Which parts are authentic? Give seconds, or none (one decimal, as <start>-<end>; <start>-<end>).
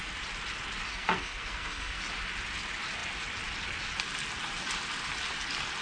0.0-0.9; 2.0-5.8